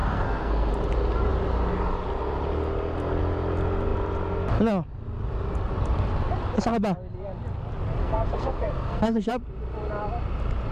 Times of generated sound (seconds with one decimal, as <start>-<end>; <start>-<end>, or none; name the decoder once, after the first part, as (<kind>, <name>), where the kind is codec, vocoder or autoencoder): 0.0-0.7 (codec, SNAC); 8.0-9.3